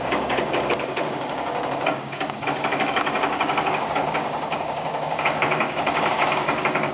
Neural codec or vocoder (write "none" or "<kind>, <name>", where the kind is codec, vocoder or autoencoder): codec, DAC